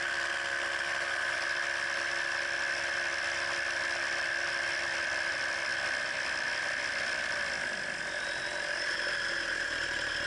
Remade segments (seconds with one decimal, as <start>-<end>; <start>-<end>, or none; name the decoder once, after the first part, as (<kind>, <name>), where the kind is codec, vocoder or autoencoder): none